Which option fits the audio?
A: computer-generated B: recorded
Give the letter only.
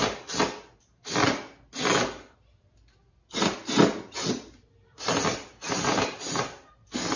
B